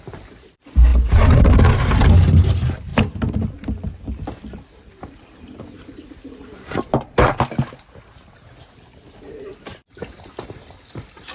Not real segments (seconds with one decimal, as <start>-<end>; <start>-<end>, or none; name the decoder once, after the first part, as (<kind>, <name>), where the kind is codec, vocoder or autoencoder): none